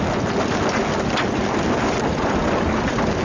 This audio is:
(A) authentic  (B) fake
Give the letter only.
A